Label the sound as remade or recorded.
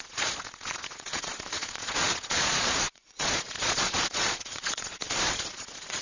remade